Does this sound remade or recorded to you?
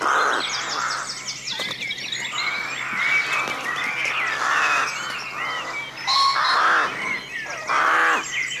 recorded